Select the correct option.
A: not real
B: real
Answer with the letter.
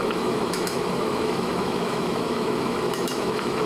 A